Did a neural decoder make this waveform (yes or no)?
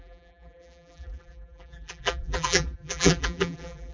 yes